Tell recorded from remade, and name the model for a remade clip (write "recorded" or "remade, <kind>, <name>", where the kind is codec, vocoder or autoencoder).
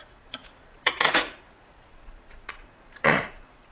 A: remade, vocoder, Vocos